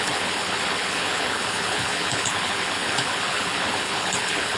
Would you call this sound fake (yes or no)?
yes